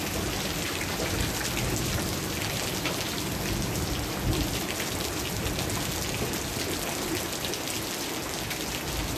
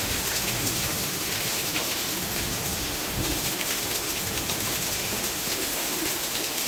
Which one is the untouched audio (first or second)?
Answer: first